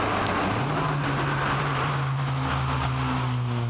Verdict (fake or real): real